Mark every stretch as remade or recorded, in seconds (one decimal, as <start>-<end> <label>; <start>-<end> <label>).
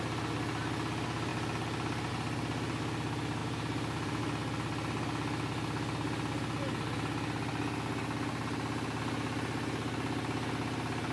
0.0-3.4 recorded; 3.4-4.2 remade; 4.2-11.1 recorded